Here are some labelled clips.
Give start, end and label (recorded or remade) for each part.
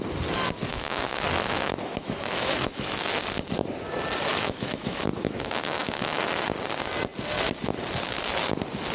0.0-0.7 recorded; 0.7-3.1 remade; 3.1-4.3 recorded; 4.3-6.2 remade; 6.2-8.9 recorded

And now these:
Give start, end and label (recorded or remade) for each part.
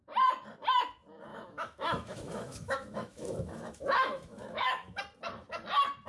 0.0-1.3 recorded; 1.3-5.0 remade; 5.0-6.1 recorded